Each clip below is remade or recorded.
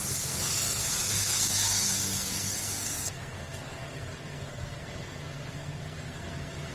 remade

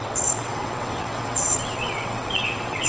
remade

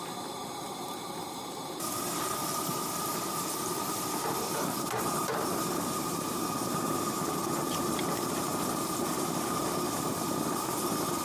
remade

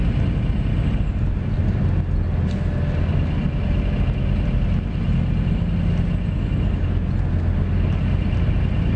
recorded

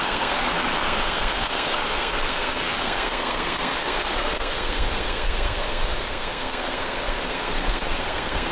remade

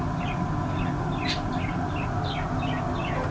remade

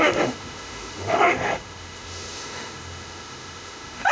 remade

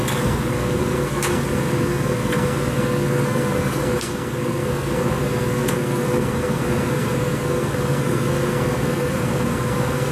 remade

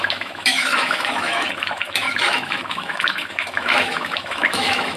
remade